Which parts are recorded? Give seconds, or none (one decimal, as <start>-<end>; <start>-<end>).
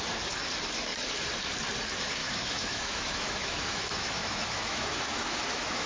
0.0-2.2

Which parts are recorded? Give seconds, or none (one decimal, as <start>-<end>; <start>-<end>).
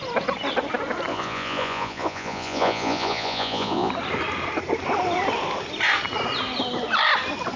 0.0-1.1; 3.9-7.6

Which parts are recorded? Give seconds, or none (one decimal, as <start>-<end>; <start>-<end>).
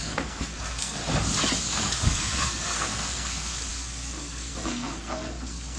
1.0-1.6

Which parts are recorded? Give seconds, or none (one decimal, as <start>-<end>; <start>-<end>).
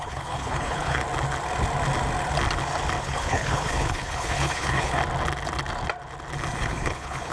1.0-3.0; 5.0-6.6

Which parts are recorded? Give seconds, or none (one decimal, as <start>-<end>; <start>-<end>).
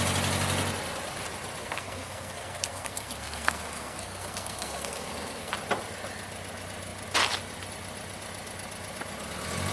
0.0-1.6; 5.5-9.7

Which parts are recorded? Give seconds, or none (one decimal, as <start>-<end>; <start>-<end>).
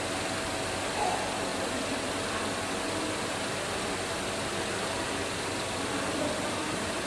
0.0-7.1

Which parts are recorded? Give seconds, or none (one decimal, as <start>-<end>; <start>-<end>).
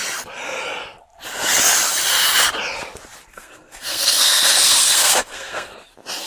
0.0-3.3; 5.7-6.3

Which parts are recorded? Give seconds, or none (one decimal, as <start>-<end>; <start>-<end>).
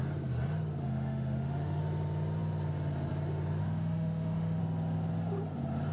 0.0-0.8; 1.8-3.6; 4.6-5.9